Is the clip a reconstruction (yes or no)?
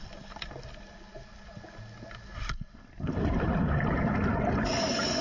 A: no